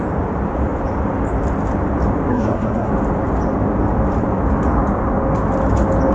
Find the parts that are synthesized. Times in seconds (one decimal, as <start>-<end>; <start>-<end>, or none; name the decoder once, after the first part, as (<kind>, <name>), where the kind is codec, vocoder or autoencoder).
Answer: 2.3-2.9 (codec, SNAC)

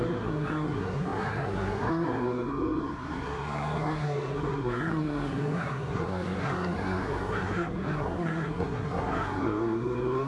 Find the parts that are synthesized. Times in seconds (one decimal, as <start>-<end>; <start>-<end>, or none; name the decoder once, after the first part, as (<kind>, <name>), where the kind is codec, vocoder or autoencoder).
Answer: 0.0-10.3 (codec, SNAC)

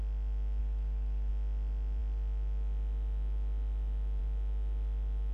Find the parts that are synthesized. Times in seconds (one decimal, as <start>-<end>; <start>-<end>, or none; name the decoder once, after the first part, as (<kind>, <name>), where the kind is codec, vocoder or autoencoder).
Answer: 0.6-1.3 (autoencoder, DAC-VAE)

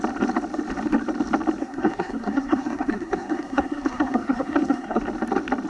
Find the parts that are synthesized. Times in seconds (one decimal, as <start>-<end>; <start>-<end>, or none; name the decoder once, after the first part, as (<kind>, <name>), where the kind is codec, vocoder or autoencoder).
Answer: 1.6-5.0 (codec, SNAC)

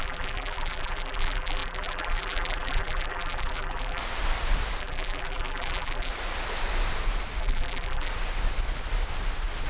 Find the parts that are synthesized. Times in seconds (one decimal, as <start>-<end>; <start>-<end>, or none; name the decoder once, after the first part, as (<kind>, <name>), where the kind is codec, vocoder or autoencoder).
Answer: 0.0-4.0 (vocoder, BigVGAN v2); 4.8-6.1; 7.4-8.1

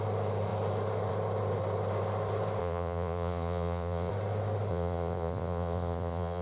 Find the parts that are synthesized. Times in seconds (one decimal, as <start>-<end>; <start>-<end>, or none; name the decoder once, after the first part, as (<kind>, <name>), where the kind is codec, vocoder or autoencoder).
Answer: 2.6-4.1 (vocoder, Vocos); 4.7-6.4

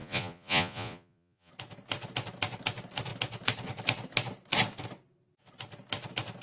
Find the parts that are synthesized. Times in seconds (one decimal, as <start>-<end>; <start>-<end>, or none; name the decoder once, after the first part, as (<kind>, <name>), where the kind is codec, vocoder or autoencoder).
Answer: 0.0-1.5 (vocoder, Vocos)

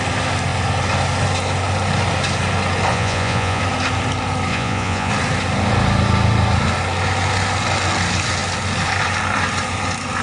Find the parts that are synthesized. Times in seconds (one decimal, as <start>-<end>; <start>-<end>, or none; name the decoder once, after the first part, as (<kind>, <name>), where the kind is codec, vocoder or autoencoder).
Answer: 2.9-3.6 (vocoder, Vocos); 4.5-5.1